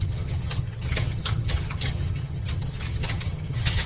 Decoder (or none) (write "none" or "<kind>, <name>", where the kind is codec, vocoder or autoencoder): vocoder, HiFi-GAN